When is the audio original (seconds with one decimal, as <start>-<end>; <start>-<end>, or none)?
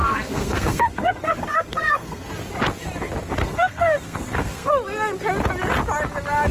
2.3-3.4; 4.7-6.5